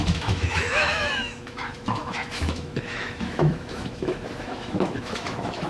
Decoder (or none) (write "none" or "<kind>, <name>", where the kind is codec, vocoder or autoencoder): autoencoder, DAC-VAE